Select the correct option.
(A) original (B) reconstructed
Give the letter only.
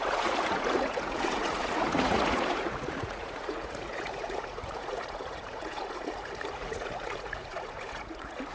B